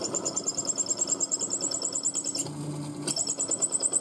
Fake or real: real